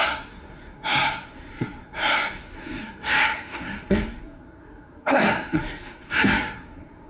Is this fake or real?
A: fake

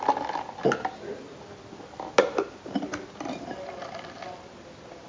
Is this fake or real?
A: real